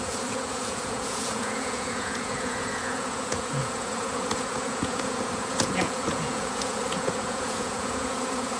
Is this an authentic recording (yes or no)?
no